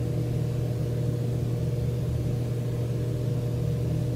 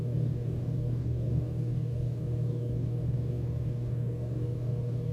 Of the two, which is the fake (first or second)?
second